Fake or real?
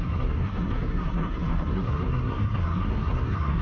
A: fake